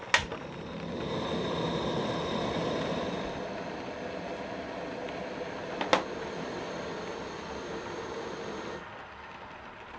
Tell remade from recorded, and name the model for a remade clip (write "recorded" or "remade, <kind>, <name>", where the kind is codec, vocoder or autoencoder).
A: recorded